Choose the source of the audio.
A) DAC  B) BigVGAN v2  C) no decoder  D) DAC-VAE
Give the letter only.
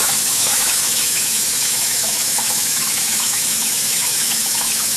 D